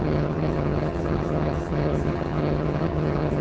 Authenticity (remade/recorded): remade